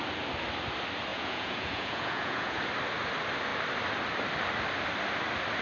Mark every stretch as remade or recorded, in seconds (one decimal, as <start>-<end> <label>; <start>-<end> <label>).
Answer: 0.0-1.1 recorded; 1.1-2.6 remade; 2.6-5.6 recorded